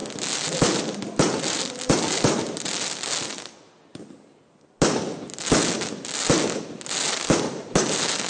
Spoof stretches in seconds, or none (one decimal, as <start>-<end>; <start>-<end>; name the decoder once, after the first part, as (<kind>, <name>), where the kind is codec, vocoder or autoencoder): none